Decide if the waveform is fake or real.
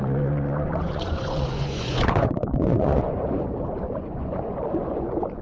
fake